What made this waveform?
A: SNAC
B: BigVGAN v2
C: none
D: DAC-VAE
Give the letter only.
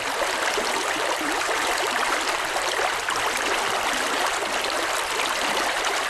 C